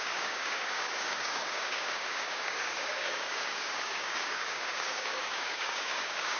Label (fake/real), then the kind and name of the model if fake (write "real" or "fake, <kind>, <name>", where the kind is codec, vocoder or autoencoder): fake, codec, DAC